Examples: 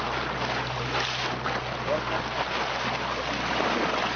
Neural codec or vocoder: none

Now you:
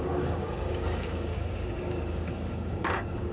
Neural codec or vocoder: codec, DAC